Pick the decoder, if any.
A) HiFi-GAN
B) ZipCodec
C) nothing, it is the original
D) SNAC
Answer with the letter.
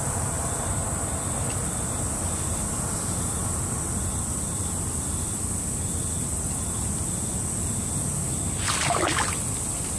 C